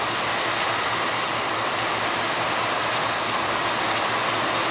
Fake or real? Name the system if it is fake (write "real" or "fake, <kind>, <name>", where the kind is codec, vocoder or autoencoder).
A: real